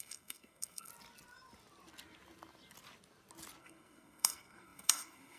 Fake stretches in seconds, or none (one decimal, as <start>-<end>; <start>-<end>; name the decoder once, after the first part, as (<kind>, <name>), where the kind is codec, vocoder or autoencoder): 0.0-0.9 (codec, SNAC); 3.6-5.4